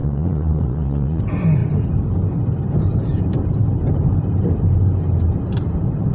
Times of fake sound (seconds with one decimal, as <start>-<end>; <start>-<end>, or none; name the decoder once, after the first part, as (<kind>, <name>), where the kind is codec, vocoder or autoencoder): 0.0-1.2 (vocoder, Vocos)